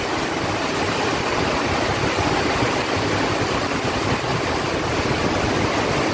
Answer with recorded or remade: recorded